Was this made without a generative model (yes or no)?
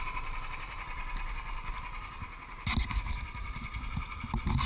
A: yes